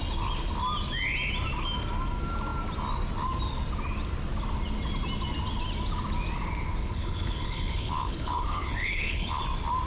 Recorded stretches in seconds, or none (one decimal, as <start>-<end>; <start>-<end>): 0.0-6.8; 9.4-9.9